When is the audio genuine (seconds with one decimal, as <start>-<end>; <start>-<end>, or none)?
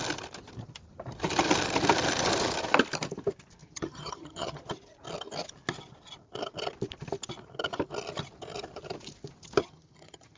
0.0-3.6; 4.6-9.6